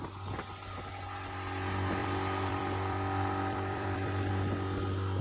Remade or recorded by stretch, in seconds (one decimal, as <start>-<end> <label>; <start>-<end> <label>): 0.0-2.0 recorded; 2.0-4.3 remade; 4.3-5.2 recorded